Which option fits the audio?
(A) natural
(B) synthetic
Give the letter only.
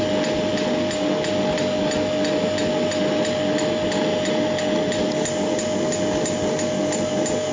A